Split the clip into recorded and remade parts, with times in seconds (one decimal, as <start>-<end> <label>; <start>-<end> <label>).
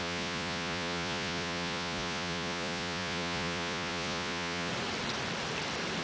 0.0-4.7 remade; 4.7-6.0 recorded